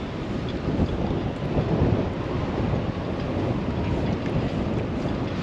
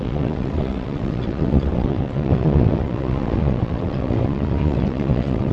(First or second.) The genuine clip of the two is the first